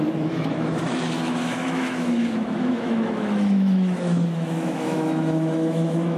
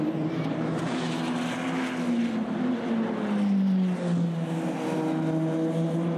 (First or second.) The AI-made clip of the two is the first